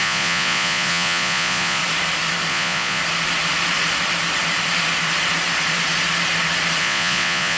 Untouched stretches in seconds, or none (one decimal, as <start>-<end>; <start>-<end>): 1.8-2.5; 3.0-6.8